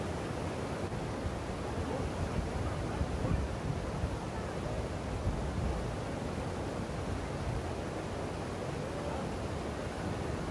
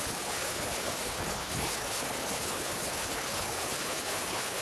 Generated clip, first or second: second